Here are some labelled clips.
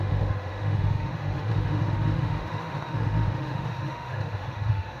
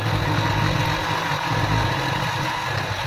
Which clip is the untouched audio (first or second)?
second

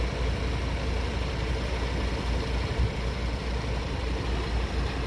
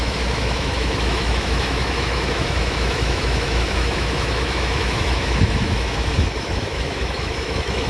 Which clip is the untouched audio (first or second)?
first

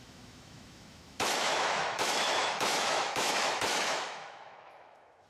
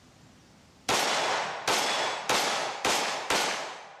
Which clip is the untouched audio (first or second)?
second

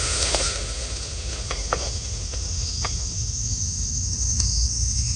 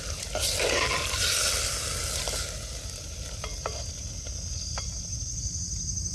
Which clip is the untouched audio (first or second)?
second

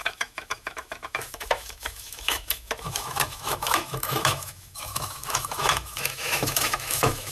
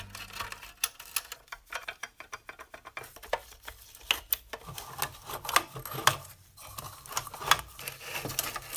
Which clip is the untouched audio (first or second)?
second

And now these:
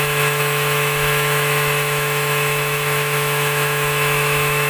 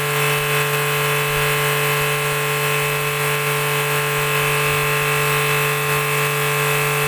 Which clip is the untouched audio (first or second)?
second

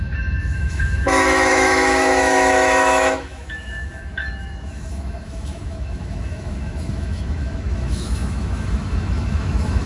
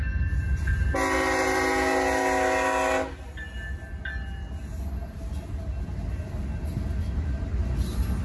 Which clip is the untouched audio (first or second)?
second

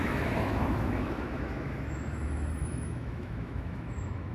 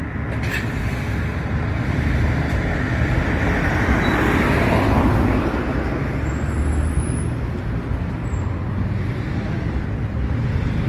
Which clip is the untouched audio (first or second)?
second